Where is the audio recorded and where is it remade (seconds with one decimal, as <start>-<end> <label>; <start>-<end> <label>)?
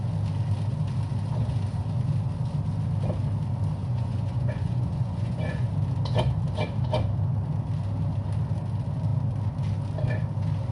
0.0-3.8 recorded; 3.8-5.7 remade; 5.7-10.7 recorded